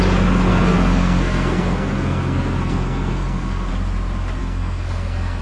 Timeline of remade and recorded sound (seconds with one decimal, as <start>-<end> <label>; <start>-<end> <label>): 0.0-0.5 recorded; 0.5-3.7 remade; 3.7-4.4 recorded; 4.4-5.4 remade